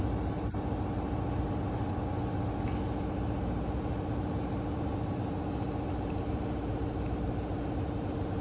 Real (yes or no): yes